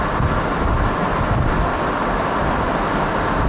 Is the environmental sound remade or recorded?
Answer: recorded